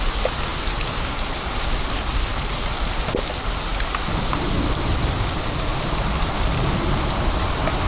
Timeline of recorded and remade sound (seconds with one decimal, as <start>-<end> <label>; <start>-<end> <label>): 0.0-0.5 recorded; 0.5-2.9 remade; 2.9-7.9 recorded

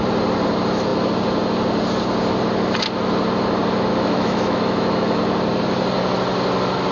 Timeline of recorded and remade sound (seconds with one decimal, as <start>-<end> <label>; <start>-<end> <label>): 0.0-3.9 recorded; 3.9-5.2 remade; 5.2-6.9 recorded

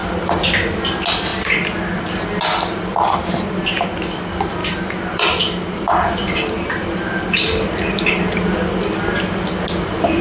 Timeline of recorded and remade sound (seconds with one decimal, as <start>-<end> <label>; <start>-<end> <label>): 0.0-4.6 recorded; 4.6-6.5 remade; 6.5-10.2 recorded

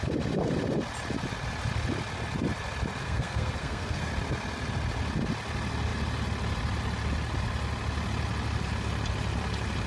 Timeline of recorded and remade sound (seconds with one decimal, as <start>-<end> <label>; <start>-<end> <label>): 0.0-3.0 recorded; 3.0-4.1 remade; 4.1-9.9 recorded

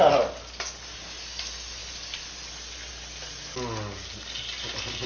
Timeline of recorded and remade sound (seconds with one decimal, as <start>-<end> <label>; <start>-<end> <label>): 0.0-5.1 recorded

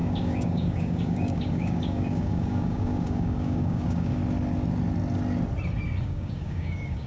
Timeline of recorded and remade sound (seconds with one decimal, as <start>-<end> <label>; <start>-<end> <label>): 0.0-4.2 remade; 4.2-6.0 recorded; 6.0-7.1 remade

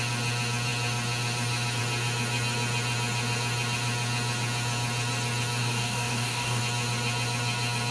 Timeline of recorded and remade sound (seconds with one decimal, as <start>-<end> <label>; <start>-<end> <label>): 0.0-5.6 recorded; 5.6-6.6 remade; 6.6-7.9 recorded

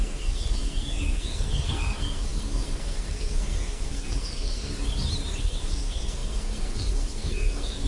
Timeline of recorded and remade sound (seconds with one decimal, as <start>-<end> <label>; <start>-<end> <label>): 0.0-4.7 remade; 4.7-5.4 recorded; 5.4-7.9 remade